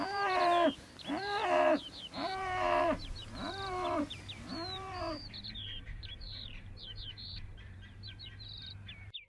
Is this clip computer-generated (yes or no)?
yes